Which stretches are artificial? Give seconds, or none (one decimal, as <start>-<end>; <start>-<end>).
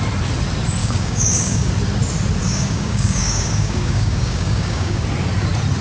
0.8-1.7; 2.4-5.0